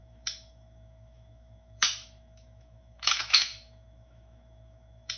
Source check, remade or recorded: remade